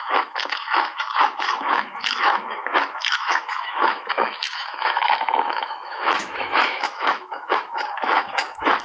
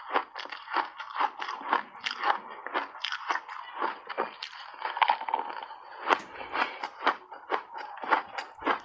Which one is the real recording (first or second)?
second